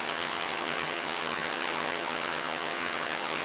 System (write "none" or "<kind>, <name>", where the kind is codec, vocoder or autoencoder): vocoder, HiFi-GAN